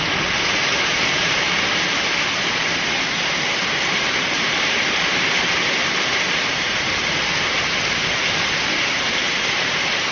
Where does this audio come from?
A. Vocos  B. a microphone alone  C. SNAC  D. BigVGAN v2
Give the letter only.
D